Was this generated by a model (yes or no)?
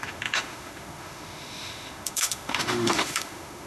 yes